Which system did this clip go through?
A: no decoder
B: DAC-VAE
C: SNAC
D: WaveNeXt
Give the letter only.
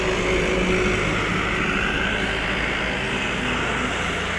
A